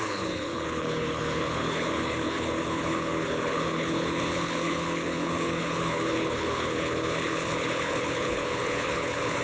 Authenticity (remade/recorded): remade